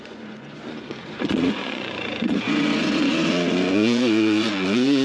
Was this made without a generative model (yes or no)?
no